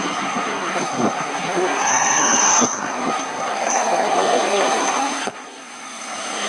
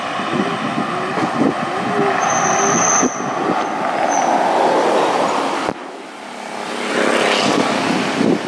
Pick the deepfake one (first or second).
first